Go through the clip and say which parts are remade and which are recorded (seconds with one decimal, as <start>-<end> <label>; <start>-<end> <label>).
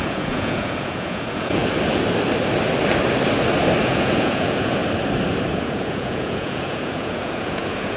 0.0-1.6 remade; 1.6-3.8 recorded; 3.8-4.8 remade; 4.8-5.5 recorded; 5.5-8.0 remade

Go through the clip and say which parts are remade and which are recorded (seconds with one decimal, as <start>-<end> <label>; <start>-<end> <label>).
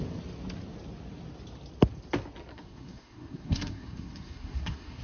0.0-2.5 recorded; 2.5-5.0 remade